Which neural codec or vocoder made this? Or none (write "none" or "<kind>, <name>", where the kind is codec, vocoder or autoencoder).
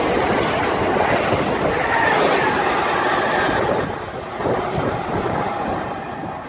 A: none